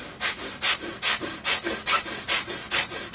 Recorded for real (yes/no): yes